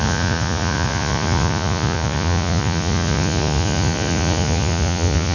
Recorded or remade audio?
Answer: remade